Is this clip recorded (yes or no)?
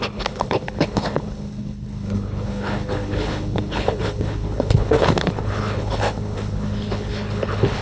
no